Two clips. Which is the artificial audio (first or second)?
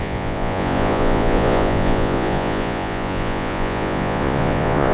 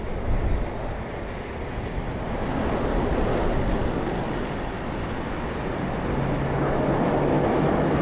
first